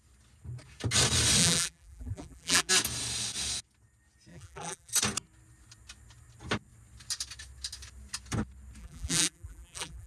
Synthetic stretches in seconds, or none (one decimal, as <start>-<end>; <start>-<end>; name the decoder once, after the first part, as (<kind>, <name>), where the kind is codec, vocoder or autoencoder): 1.4-2.7 (vocoder, BigVGAN v2); 4.3-4.9; 8.8-10.1